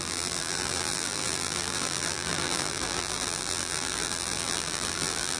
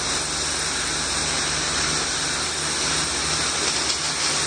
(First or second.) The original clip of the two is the second